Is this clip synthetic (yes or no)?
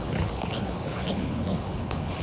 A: yes